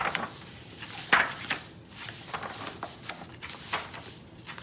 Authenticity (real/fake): real